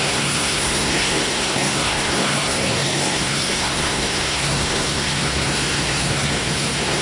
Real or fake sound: fake